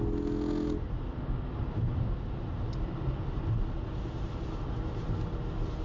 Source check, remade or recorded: recorded